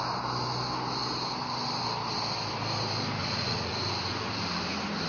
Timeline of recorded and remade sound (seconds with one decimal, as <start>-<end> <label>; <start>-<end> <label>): 0.0-3.2 recorded; 3.2-3.7 remade; 3.7-5.1 recorded